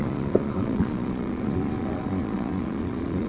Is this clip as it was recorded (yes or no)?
no